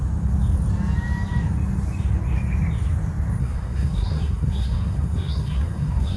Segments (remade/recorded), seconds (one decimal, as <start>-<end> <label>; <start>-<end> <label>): 0.0-3.4 recorded; 3.4-6.2 remade